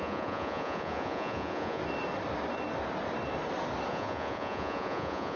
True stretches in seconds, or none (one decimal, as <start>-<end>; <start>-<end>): 1.8-3.9